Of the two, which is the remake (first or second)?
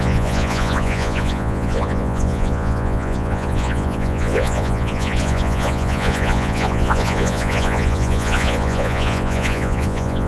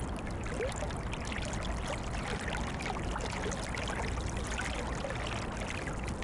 first